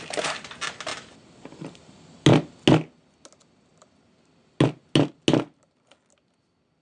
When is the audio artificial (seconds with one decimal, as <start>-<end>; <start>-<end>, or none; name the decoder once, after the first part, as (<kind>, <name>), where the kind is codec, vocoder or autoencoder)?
none